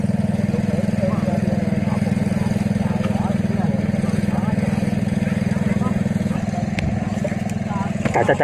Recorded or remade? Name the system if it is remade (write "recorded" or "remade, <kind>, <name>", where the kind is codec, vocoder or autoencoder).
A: recorded